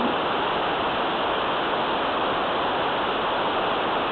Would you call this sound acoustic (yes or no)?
yes